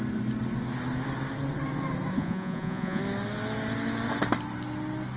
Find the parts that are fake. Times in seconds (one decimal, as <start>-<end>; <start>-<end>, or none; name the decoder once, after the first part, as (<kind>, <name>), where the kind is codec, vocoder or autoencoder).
2.1-3.0 (vocoder, Vocos)